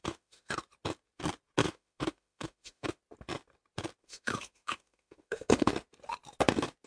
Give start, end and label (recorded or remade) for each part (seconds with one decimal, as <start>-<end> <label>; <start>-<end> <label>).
0.0-0.5 remade; 0.5-1.6 recorded; 1.6-3.0 remade; 3.0-4.0 recorded; 4.0-5.7 remade; 5.7-6.9 recorded